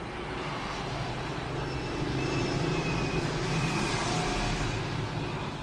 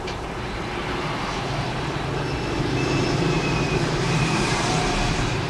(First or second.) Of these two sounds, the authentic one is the first